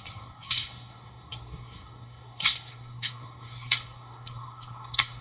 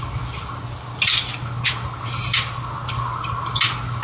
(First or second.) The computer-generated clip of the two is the first